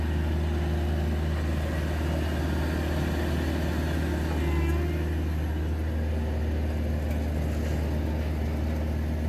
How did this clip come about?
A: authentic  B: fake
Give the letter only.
A